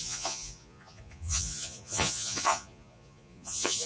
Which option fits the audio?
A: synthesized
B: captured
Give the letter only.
A